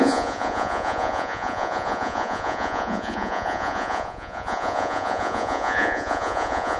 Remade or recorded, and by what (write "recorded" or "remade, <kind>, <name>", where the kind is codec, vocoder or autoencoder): remade, vocoder, Vocos